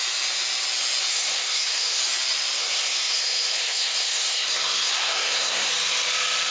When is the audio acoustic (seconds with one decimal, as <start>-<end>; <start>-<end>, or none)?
0.0-1.1; 2.0-2.6; 5.7-6.5